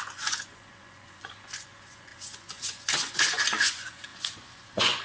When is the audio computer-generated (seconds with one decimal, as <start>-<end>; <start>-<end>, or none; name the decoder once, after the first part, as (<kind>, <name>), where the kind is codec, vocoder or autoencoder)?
0.0-5.0 (vocoder, Vocos)